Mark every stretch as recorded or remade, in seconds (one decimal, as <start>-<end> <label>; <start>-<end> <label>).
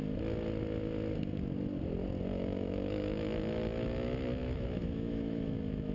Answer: 0.0-2.3 recorded; 2.3-5.9 remade